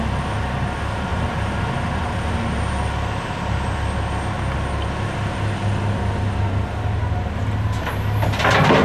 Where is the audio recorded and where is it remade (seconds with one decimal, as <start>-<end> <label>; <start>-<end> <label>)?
0.0-1.1 recorded; 1.1-1.6 remade; 1.6-8.8 recorded